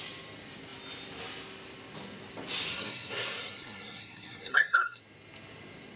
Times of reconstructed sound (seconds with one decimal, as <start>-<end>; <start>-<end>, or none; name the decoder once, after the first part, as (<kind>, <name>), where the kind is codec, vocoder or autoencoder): 2.7-5.0 (codec, SNAC)